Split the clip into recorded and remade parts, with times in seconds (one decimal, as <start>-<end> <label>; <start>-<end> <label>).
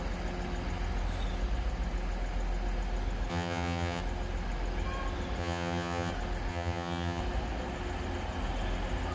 0.0-3.3 recorded; 3.3-4.0 remade; 4.0-5.4 recorded; 5.4-6.1 remade; 6.1-6.5 recorded; 6.5-7.2 remade; 7.2-9.1 recorded